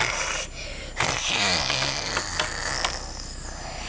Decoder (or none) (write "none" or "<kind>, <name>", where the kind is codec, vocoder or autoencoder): none